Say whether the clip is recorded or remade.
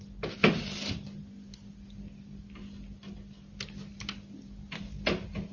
recorded